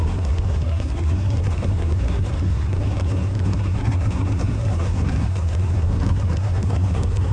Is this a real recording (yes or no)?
no